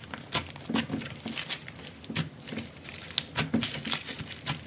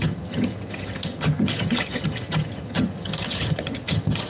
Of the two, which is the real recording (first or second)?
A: first